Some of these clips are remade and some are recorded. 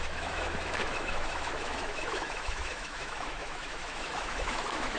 remade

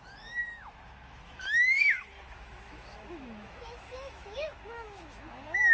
remade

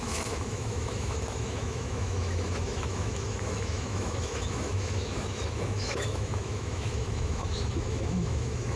remade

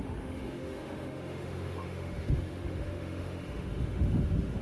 remade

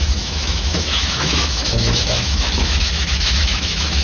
remade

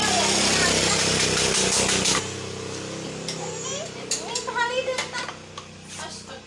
recorded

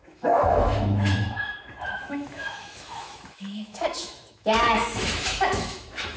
remade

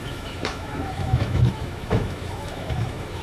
remade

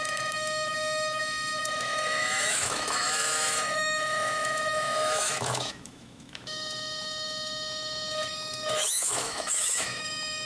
remade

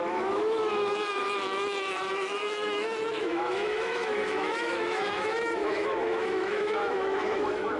remade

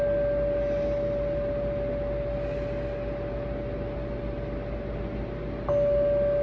recorded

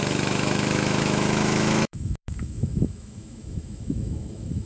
remade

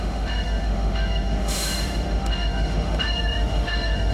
remade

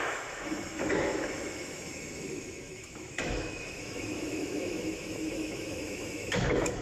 remade